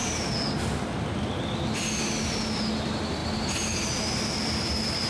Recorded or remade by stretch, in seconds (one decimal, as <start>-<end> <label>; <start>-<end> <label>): 0.0-2.6 recorded; 2.6-3.2 remade; 3.2-4.6 recorded; 4.6-5.1 remade